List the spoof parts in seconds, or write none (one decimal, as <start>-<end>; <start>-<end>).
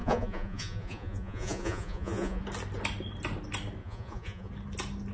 0.0-2.4; 3.8-4.5